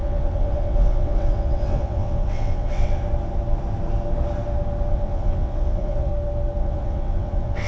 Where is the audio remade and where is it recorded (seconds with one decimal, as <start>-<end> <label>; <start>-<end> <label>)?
0.0-3.0 remade; 3.0-4.9 recorded; 4.9-6.1 remade; 6.1-6.6 recorded; 6.6-7.7 remade